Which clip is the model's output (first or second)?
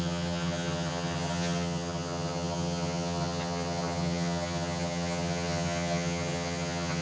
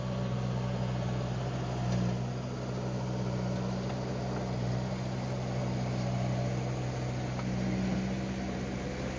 first